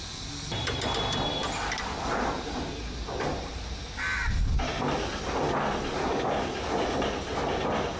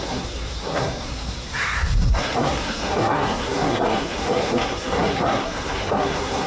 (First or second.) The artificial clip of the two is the second